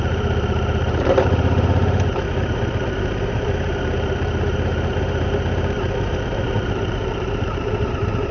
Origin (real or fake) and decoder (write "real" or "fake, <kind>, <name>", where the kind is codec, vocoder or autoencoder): fake, vocoder, BigVGAN v2